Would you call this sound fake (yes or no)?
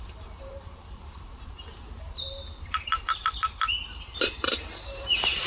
yes